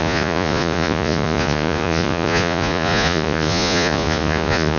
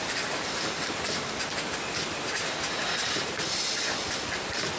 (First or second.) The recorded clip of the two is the second